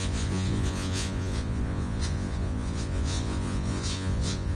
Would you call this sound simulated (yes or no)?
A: yes